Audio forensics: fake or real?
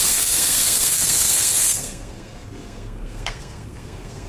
fake